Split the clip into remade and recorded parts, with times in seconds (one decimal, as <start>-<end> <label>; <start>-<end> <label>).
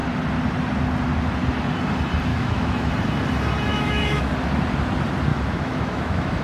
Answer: 0.0-2.3 recorded; 2.3-2.9 remade; 2.9-3.7 recorded; 3.7-4.3 remade; 4.3-5.3 recorded; 5.3-6.4 remade